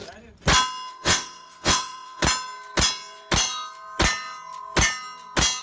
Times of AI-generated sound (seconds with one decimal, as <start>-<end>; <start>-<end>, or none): 0.9-2.2